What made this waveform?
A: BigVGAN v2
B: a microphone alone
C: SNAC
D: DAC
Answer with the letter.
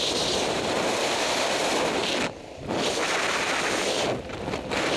A